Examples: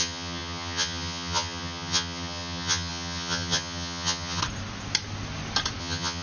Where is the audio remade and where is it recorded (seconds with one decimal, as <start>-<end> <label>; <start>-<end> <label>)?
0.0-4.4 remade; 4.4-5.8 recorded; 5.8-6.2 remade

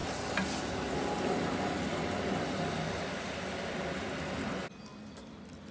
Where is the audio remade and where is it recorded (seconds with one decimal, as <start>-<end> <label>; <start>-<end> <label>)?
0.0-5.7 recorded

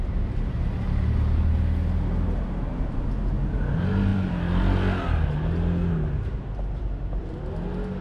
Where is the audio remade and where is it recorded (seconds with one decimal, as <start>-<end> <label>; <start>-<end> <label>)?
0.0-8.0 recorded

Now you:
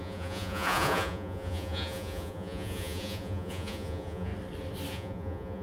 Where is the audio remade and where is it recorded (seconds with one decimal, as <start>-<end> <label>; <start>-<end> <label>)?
0.0-4.3 remade; 4.3-4.9 recorded; 4.9-5.6 remade